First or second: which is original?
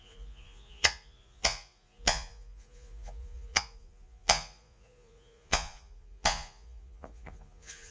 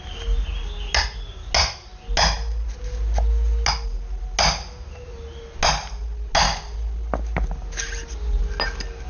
second